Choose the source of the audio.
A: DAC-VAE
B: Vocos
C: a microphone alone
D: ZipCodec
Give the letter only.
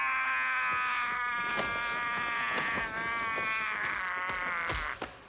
C